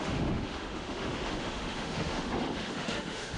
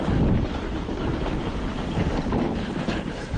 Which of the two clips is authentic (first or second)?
second